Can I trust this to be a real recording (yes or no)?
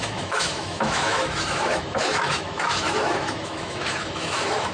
no